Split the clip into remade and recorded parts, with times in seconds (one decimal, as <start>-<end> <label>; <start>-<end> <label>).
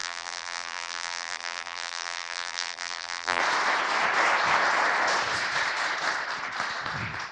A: 0.0-3.4 remade; 3.4-7.3 recorded